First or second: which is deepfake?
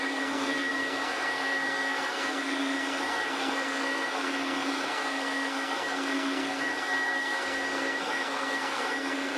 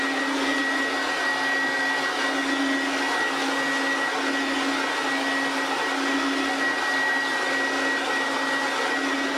first